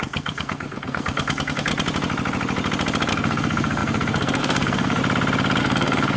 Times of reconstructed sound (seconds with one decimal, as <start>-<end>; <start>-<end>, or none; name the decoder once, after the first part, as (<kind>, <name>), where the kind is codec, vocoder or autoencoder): 0.0-1.7 (codec, SNAC); 3.1-5.0; 5.6-6.2